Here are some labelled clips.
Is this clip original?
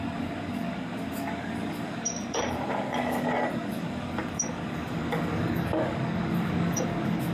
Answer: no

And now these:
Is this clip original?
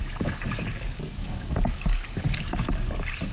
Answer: no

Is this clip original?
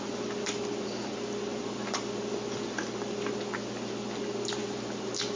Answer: yes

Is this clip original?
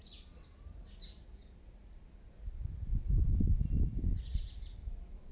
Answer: yes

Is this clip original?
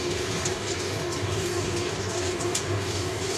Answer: no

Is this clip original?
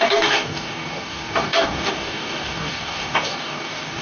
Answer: no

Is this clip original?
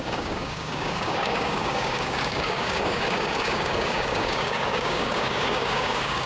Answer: no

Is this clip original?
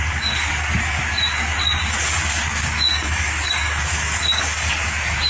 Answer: no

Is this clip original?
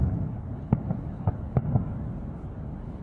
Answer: no